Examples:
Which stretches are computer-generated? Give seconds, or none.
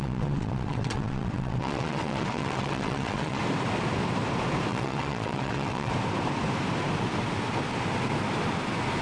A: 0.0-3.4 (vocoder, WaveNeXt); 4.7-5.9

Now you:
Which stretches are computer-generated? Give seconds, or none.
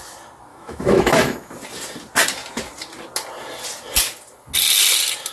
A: 0.5-1.5 (autoencoder, DAC-VAE)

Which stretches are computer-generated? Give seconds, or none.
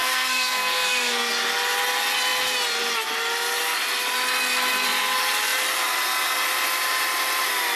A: 0.0-1.3 (codec, SNAC)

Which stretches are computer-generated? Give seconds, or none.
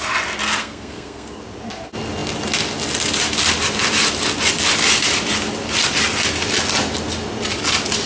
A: 0.6-1.4 (codec, SNAC)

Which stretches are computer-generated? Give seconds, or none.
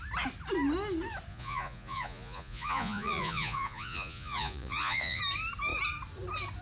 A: 1.3-5.2 (vocoder, Vocos)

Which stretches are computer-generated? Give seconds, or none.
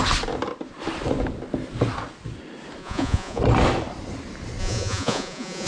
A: 2.8-3.4 (vocoder, Vocos); 4.6-5.7